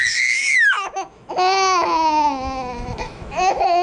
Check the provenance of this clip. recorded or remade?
remade